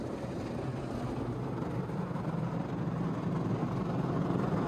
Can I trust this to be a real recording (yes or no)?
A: yes